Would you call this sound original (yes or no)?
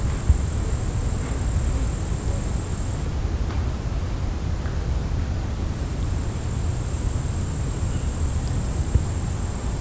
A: yes